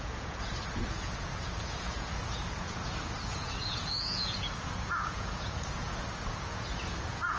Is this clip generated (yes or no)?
yes